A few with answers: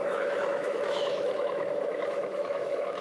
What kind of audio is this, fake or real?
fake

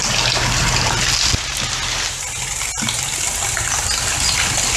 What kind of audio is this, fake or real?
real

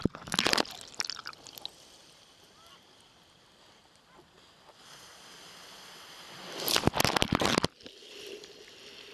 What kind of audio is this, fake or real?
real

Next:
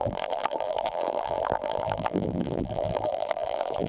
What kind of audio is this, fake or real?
fake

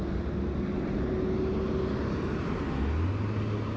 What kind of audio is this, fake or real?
real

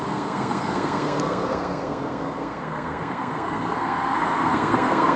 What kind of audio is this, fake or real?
fake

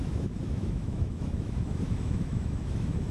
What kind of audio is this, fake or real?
fake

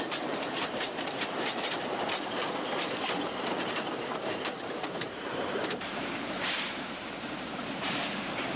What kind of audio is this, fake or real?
fake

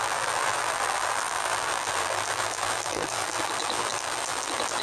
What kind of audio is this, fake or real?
fake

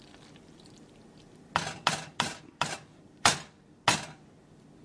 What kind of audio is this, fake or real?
real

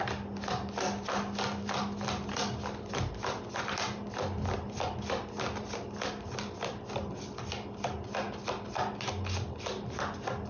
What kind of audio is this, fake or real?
real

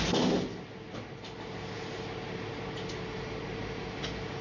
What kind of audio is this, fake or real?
real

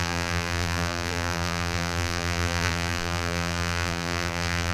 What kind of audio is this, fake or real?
fake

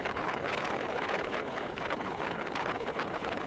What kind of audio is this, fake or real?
fake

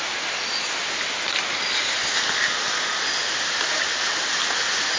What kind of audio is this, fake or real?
real